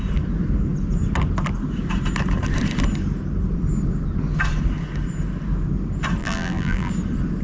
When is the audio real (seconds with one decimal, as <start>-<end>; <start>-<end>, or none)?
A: 0.0-6.2; 6.9-7.4